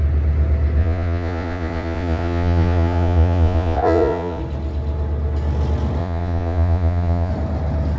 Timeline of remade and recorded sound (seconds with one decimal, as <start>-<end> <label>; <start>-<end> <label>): 0.0-0.8 recorded; 0.8-4.4 remade; 4.4-6.0 recorded; 6.0-7.3 remade; 7.3-8.0 recorded